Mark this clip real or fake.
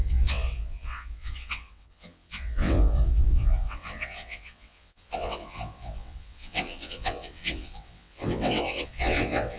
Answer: fake